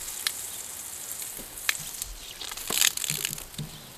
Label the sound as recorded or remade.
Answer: recorded